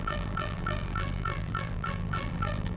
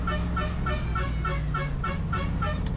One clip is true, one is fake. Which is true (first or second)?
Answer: second